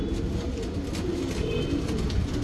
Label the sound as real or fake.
real